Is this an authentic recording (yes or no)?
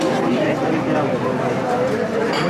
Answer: yes